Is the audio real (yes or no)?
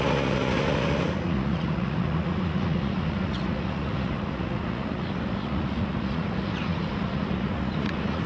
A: no